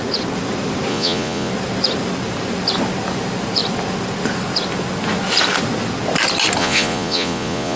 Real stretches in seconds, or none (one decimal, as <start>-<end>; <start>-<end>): 0.0-0.9; 1.5-6.6